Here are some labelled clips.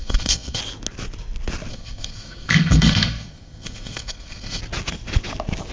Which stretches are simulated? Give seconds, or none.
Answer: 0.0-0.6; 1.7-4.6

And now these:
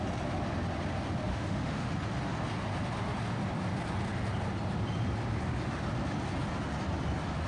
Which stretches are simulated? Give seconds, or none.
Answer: 1.3-1.9

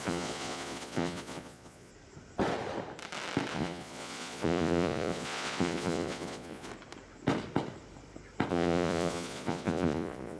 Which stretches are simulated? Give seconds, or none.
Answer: 0.0-1.9; 3.5-6.7; 8.5-10.4

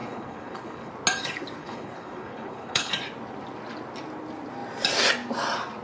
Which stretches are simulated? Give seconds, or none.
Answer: 0.0-0.9; 1.6-2.9

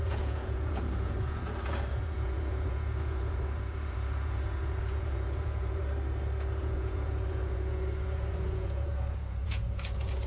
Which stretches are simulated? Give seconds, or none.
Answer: 0.0-5.8; 6.6-10.3

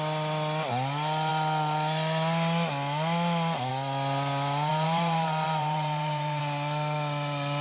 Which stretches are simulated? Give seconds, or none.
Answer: 4.7-6.4